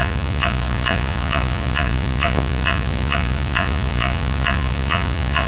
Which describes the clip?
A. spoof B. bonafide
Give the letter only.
A